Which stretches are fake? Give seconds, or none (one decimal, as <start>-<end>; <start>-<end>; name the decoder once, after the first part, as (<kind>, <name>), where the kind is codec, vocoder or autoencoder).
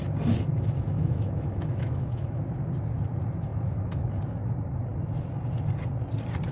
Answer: 0.5-2.4 (autoencoder, DAC-VAE); 3.5-4.0